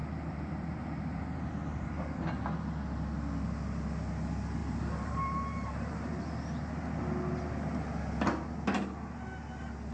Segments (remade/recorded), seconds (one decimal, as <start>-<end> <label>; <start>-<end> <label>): 0.0-1.5 remade; 1.5-4.6 recorded; 4.6-6.4 remade; 6.4-9.9 recorded